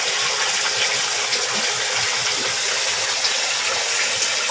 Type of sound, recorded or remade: recorded